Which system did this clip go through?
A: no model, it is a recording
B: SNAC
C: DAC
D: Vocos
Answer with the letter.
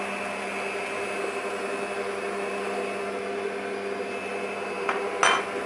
A